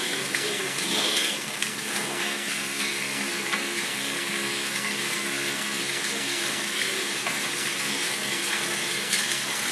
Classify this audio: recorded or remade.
remade